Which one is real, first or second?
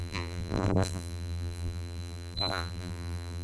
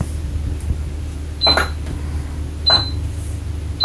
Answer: second